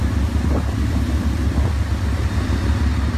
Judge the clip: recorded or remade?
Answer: recorded